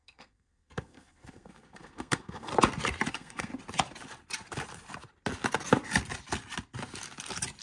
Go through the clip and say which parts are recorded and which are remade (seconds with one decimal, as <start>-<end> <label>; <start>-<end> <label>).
0.0-2.5 remade; 2.5-3.1 recorded; 3.1-3.5 remade; 3.5-7.6 recorded